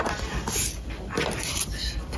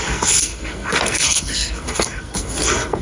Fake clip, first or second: second